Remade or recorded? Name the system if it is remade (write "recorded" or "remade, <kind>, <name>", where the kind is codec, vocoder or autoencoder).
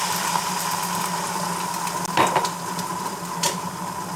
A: recorded